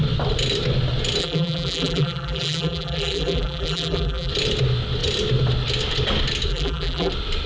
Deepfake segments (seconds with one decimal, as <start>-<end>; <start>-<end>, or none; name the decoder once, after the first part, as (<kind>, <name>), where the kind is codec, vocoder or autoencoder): 1.2-4.3 (vocoder, BigVGAN v2); 6.5-7.1